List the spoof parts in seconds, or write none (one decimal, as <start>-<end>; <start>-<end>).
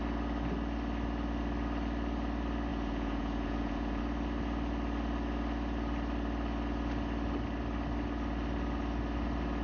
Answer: 2.7-4.0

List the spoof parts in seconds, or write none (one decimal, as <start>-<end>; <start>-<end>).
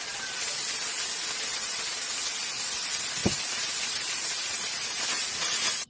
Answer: 3.2-5.9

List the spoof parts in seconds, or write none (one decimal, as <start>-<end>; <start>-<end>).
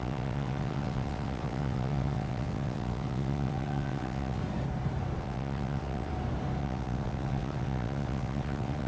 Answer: 0.0-4.4; 5.2-6.1; 6.6-8.9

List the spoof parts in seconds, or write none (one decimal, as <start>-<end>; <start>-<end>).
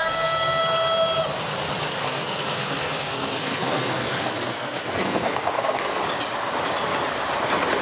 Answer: 0.0-0.6; 2.0-6.0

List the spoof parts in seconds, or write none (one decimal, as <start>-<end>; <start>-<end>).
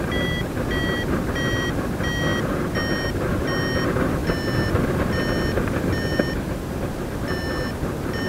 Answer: none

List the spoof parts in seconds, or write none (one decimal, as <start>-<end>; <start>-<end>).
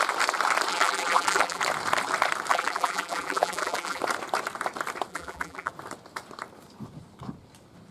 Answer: 0.7-1.6; 2.5-4.0; 5.1-5.7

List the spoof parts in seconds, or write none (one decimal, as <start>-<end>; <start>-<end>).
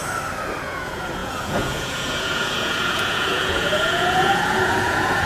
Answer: 0.6-5.3